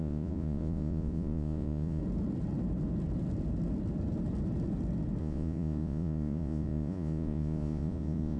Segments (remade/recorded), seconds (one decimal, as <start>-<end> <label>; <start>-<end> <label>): 0.0-2.0 remade; 2.0-5.2 recorded; 5.2-8.4 remade